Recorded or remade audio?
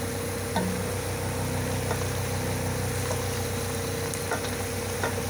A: recorded